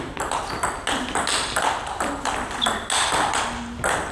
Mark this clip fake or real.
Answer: real